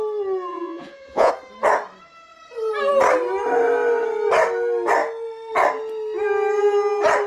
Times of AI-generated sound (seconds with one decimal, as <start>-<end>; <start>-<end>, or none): 0.5-1.3